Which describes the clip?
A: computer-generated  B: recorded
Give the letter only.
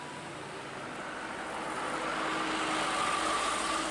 B